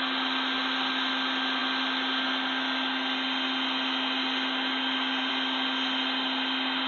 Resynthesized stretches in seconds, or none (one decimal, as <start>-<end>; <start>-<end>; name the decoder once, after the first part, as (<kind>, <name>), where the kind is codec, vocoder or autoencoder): none